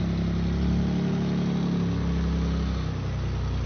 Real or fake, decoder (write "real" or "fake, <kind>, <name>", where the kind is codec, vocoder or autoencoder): real